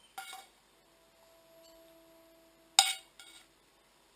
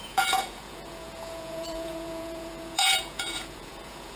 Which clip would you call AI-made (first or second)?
second